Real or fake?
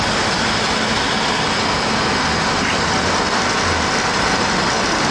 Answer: real